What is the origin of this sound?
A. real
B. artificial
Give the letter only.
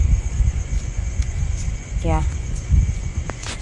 B